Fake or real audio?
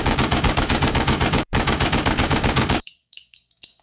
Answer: fake